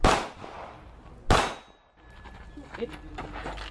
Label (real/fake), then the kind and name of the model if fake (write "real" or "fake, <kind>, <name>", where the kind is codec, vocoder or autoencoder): real